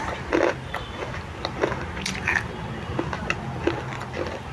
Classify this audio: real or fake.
real